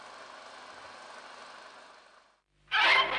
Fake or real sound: real